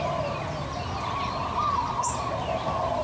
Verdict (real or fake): real